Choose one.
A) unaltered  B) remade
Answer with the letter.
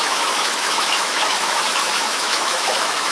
B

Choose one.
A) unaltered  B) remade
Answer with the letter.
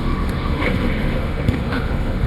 B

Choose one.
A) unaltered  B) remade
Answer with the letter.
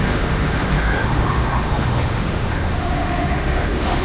B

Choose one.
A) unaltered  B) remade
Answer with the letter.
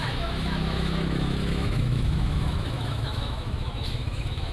B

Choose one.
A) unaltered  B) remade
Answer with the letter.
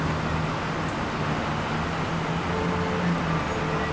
A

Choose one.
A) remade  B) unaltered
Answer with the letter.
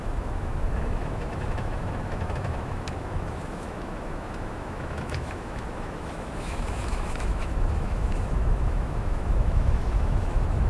A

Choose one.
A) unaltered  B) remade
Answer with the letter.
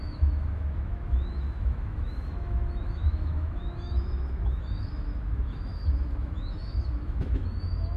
B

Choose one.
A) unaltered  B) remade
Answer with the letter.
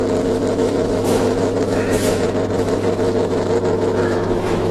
B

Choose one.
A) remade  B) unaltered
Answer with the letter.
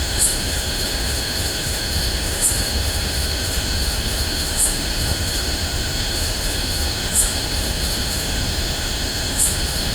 A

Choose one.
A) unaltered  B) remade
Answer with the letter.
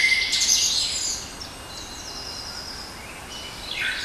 A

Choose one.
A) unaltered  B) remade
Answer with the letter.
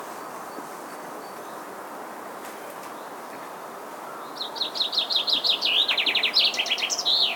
A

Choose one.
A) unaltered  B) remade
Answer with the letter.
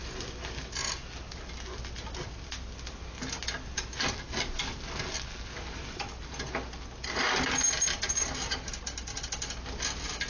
A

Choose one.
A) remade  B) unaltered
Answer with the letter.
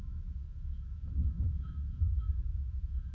A